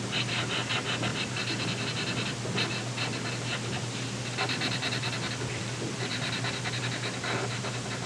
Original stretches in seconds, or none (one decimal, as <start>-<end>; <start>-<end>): 0.0-8.1